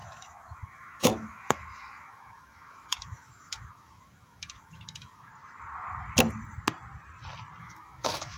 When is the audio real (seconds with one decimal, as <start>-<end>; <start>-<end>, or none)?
5.3-7.6